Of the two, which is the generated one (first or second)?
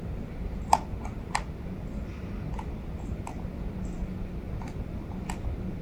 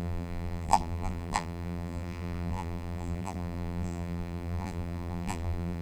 second